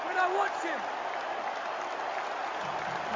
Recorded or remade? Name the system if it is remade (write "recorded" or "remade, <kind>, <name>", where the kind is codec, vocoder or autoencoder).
recorded